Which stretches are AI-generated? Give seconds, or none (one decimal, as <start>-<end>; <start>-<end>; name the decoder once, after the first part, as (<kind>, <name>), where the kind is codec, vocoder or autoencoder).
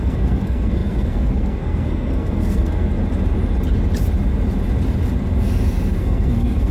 0.0-3.0 (codec, SNAC); 6.0-6.7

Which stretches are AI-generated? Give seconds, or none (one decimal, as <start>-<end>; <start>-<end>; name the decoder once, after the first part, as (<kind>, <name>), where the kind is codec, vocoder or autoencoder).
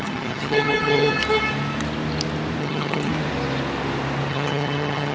0.0-1.2 (vocoder, HiFi-GAN); 2.6-3.1; 4.3-5.1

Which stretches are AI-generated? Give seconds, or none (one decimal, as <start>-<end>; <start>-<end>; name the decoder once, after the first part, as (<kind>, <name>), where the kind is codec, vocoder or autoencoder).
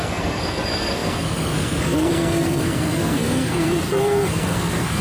0.0-5.0 (codec, SNAC)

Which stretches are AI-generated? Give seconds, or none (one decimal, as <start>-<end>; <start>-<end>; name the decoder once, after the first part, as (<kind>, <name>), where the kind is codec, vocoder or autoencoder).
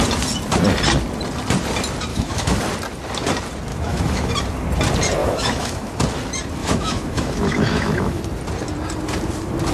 2.1-2.6 (autoencoder, DAC-VAE); 3.7-4.3; 5.2-5.9; 6.6-8.2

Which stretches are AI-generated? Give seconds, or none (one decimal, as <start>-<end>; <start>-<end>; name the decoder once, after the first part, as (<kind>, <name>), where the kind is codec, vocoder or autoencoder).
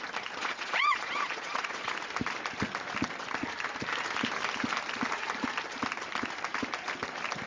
0.4-1.9 (vocoder, Vocos)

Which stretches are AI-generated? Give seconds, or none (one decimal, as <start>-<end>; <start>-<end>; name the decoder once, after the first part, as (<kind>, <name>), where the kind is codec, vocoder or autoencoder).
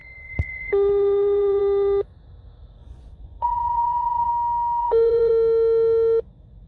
0.0-1.6 (vocoder, Vocos); 2.8-4.3; 4.8-5.3